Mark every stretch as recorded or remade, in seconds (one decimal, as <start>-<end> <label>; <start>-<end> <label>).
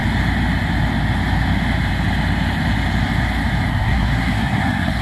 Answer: 0.0-3.7 recorded; 3.7-5.0 remade